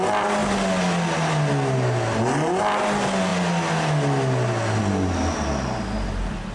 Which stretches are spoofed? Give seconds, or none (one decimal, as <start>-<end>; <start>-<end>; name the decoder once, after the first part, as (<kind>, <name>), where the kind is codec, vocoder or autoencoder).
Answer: none